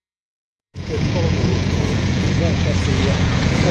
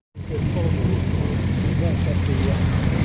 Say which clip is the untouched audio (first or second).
second